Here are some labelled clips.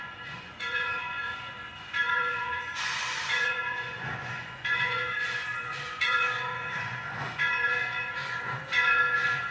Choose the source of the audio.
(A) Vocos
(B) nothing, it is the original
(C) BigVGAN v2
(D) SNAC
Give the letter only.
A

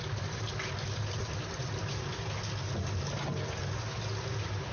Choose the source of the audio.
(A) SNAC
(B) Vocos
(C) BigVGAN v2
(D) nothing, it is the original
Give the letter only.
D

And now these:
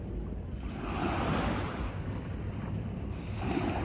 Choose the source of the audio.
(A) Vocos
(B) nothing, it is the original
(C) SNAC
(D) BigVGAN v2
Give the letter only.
B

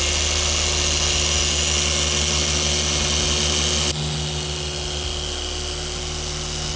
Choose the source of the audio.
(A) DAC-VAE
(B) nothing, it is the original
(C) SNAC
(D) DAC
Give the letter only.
B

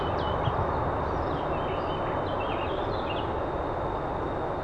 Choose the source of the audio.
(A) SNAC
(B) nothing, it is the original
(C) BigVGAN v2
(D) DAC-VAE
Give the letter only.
B